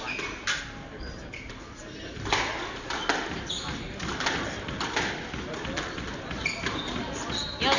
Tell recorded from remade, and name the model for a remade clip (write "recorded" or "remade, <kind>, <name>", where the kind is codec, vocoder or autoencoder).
recorded